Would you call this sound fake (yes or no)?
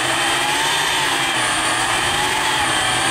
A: yes